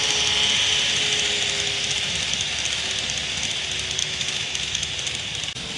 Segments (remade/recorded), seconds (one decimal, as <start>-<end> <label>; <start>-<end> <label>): 0.0-4.0 recorded; 4.0-4.9 remade; 4.9-5.8 recorded

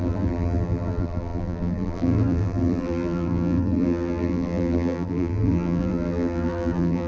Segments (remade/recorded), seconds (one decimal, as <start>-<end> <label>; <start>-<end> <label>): 0.0-7.1 remade

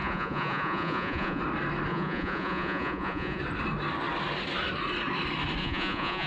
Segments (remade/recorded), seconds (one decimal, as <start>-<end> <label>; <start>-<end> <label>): 0.0-1.4 remade; 1.4-1.9 recorded; 1.9-3.4 remade; 3.4-5.6 recorded; 5.6-6.3 remade